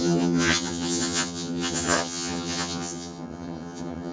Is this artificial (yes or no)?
yes